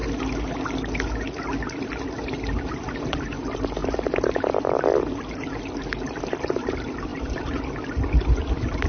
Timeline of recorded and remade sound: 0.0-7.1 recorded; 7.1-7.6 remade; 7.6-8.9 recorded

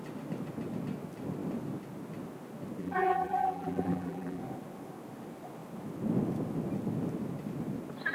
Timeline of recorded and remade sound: 0.0-2.8 recorded; 2.8-4.4 remade; 4.4-8.1 recorded

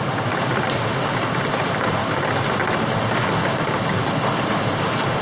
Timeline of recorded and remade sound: 0.0-5.2 recorded

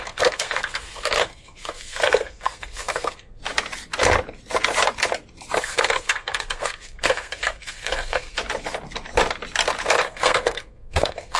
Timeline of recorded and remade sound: 0.0-3.4 remade; 3.4-5.6 recorded; 5.6-8.4 remade; 8.4-9.9 recorded; 9.9-11.4 remade

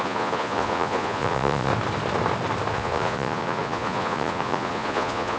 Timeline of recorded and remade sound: 0.0-1.7 remade; 1.7-2.7 recorded; 2.7-5.4 remade

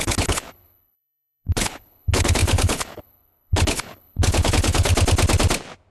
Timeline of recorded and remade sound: 0.0-4.9 remade; 4.9-5.9 recorded

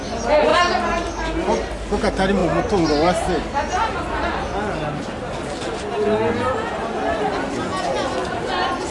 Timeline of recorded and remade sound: 0.0-8.9 recorded